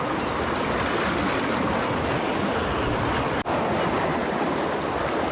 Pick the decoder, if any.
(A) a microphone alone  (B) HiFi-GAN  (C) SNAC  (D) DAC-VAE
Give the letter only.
A